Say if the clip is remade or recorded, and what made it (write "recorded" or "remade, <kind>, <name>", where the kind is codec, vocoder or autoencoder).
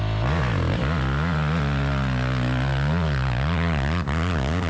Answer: recorded